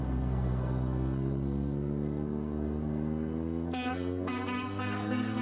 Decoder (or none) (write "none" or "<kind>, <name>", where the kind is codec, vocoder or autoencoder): codec, SNAC